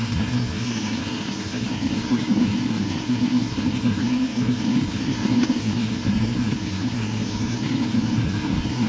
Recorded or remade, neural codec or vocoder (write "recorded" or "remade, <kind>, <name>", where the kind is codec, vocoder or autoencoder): remade, codec, SNAC